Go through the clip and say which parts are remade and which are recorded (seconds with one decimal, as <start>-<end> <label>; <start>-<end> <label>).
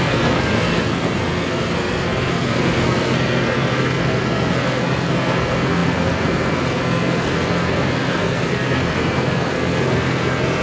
0.0-10.6 remade